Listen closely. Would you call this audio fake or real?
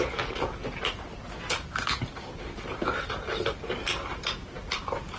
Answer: real